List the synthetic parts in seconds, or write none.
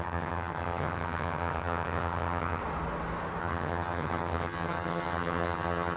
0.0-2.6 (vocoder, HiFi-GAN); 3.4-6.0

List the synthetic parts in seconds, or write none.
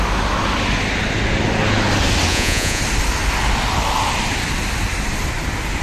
2.3-2.8 (vocoder, Vocos)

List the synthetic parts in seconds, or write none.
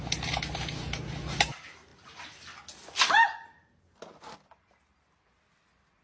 none